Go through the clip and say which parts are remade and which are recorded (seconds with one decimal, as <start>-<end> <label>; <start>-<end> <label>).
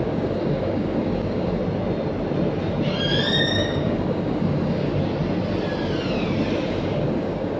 0.0-1.6 remade; 1.6-3.4 recorded; 3.4-4.9 remade; 4.9-6.7 recorded; 6.7-7.6 remade